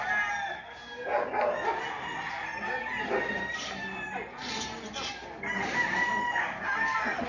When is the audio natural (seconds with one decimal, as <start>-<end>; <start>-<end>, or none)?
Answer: 0.0-7.3